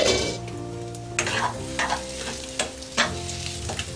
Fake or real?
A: real